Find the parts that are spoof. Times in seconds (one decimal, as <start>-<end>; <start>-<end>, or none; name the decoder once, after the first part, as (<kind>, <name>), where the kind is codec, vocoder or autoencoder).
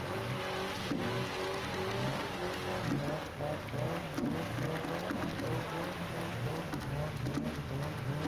5.0-6.8 (vocoder, BigVGAN v2)